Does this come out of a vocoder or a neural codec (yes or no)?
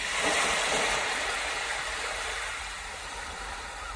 no